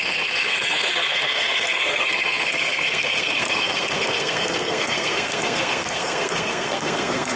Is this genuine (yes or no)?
no